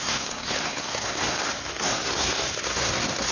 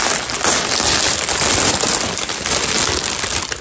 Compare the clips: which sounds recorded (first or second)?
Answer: second